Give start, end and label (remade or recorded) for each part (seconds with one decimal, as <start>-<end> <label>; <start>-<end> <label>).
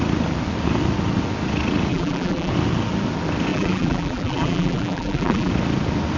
0.0-1.9 recorded; 1.9-2.5 remade; 2.5-3.5 recorded; 3.5-5.5 remade; 5.5-6.2 recorded